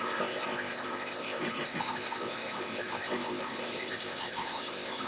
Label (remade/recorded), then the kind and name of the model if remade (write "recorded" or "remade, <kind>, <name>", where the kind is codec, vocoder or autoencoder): remade, codec, ZipCodec